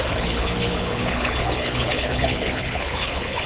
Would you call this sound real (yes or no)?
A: no